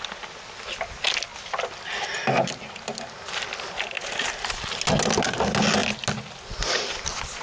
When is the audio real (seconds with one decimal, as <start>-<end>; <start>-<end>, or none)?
0.0-7.4